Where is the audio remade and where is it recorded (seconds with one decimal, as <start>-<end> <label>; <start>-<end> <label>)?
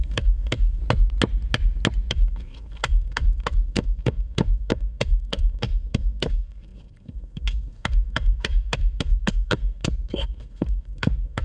0.0-0.8 remade; 0.8-2.1 recorded; 2.1-11.4 remade